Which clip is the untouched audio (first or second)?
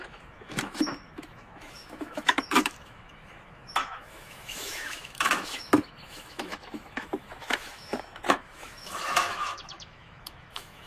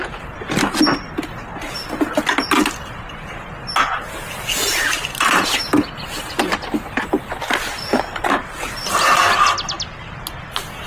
second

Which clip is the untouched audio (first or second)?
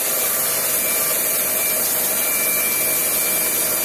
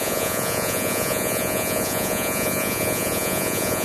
first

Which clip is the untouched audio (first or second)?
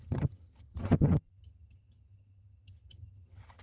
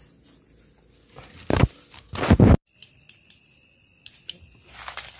second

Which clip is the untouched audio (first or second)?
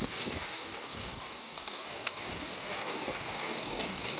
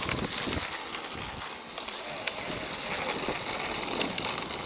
second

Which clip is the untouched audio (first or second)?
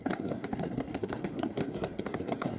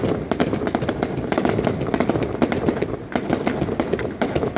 second